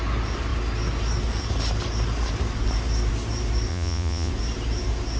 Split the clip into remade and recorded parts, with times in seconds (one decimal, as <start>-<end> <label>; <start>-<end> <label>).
0.0-3.7 recorded; 3.7-4.3 remade; 4.3-5.2 recorded